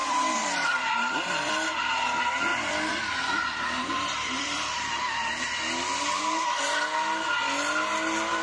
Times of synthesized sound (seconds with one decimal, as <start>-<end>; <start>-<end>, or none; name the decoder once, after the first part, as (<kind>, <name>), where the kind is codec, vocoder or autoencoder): 0.0-1.5 (vocoder, BigVGAN v2); 2.5-6.4